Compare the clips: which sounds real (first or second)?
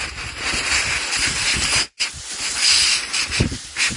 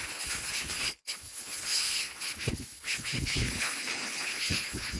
first